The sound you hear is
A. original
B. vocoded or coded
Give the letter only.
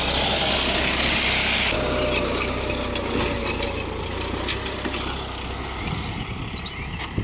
A